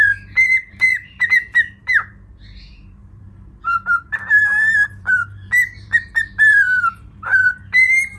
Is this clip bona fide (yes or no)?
no